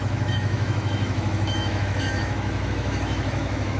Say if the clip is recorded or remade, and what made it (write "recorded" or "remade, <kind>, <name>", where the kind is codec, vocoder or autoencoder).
remade, autoencoder, DAC-VAE